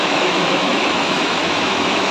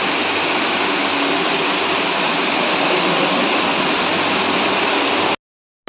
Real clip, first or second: second